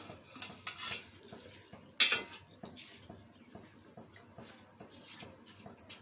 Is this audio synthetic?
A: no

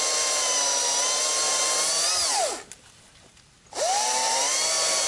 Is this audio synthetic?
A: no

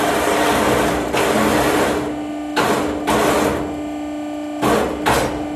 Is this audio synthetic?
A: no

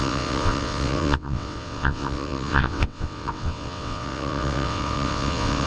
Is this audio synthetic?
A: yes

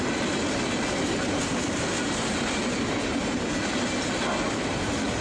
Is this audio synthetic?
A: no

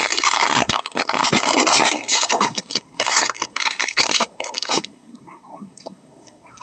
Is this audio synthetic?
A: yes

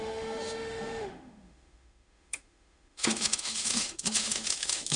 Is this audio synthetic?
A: yes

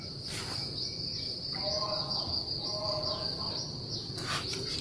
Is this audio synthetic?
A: no